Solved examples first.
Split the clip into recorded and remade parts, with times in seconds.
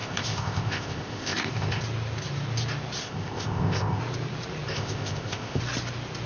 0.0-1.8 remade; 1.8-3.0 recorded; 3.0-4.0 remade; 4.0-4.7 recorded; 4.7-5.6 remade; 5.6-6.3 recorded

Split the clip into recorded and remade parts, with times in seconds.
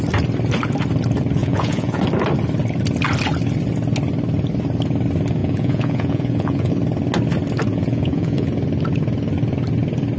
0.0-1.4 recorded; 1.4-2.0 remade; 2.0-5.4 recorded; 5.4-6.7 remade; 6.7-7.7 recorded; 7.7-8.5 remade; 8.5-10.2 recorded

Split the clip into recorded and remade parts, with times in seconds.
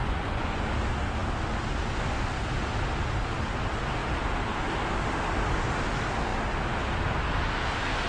0.0-0.6 remade; 0.6-8.1 recorded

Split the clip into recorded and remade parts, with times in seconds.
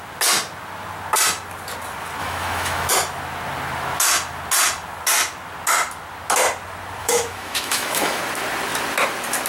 0.0-2.2 recorded; 2.2-2.9 remade; 2.9-7.0 recorded; 7.0-8.2 remade; 8.2-9.5 recorded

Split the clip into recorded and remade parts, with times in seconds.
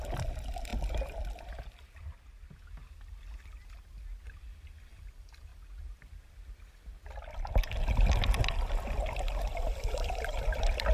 0.0-0.7 remade; 0.7-4.8 recorded; 4.8-5.5 remade; 5.5-8.4 recorded; 8.4-10.9 remade